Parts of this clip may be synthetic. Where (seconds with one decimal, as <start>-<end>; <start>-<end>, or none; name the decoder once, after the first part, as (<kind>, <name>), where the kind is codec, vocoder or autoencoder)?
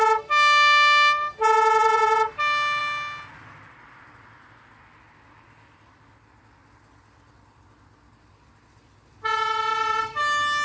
1.8-2.3 (vocoder, BigVGAN v2); 9.7-10.2